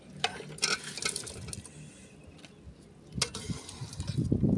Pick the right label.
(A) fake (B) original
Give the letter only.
B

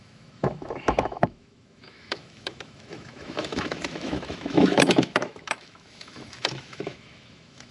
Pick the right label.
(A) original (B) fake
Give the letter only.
B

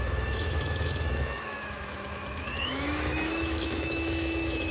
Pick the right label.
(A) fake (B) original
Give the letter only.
A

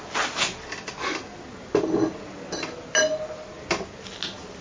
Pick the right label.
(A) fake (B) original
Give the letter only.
B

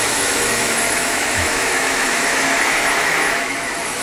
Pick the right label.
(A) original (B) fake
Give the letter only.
B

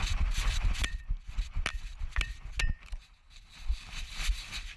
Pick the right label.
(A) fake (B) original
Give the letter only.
B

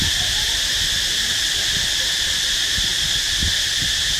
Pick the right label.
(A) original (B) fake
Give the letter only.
A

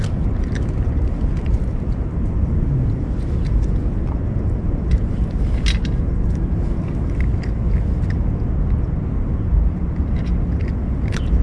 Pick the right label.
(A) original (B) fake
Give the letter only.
A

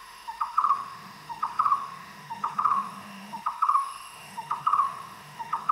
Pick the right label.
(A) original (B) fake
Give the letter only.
B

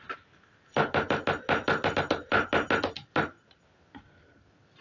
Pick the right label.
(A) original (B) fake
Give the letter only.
A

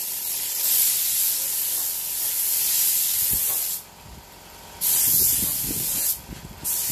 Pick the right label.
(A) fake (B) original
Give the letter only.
B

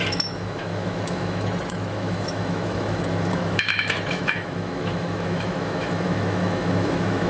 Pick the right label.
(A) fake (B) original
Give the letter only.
A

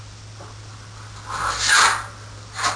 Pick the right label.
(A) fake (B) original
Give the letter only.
B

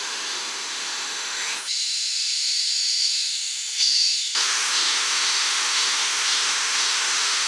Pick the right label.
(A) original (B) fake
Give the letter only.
B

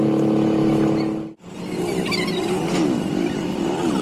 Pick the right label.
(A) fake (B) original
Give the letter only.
B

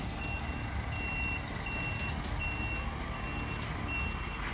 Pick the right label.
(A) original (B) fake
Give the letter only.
A